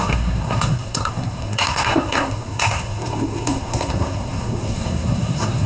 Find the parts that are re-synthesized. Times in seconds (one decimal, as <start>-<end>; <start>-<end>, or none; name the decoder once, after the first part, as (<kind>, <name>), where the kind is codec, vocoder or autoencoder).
0.0-5.7 (codec, SNAC)